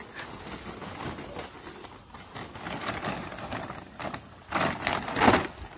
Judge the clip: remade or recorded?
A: recorded